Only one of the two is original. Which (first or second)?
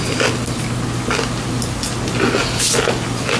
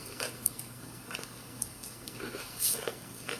first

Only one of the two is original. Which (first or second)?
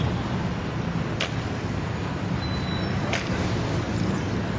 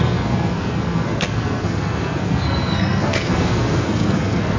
first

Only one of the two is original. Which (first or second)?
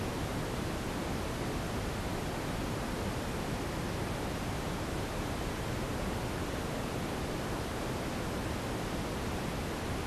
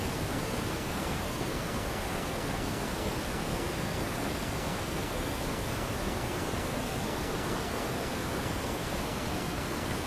first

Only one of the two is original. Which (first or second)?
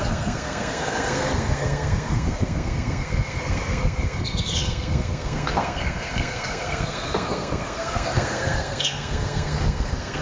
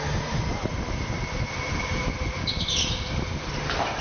second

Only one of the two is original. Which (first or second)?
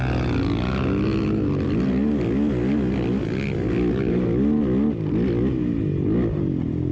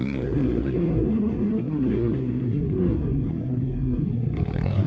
first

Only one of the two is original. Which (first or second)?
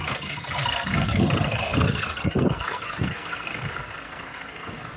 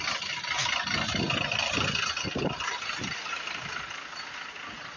second